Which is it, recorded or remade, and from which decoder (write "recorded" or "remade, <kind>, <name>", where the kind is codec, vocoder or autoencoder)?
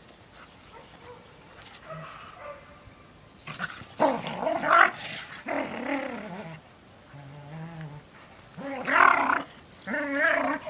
recorded